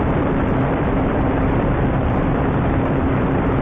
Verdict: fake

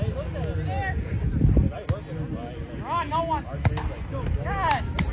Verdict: real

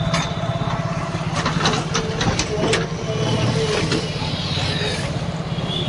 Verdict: real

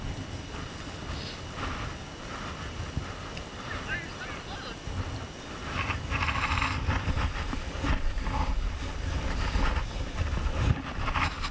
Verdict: real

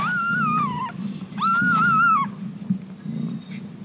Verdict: real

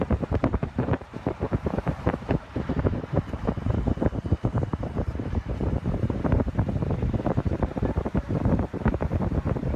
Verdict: fake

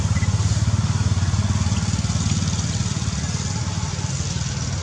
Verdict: real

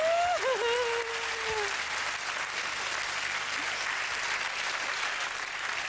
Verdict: real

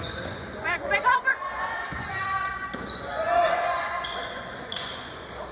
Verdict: fake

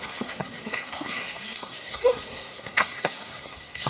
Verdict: fake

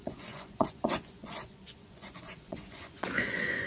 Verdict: fake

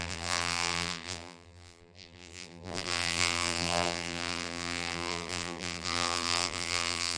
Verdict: fake